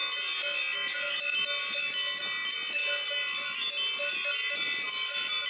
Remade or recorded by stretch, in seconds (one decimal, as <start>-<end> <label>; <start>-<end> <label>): 0.0-5.5 recorded